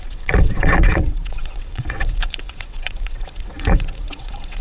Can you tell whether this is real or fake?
fake